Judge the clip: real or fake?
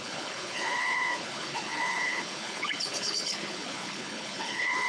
fake